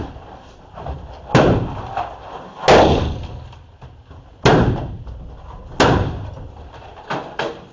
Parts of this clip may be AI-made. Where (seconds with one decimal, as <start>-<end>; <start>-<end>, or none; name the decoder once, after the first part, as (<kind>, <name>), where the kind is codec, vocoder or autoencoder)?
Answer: none